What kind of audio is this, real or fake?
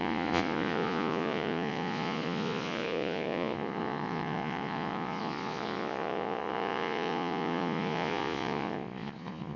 fake